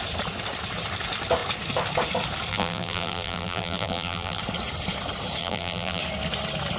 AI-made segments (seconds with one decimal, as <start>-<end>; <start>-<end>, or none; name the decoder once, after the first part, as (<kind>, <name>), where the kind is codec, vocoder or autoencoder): 2.5-4.4 (vocoder, BigVGAN v2); 5.4-6.0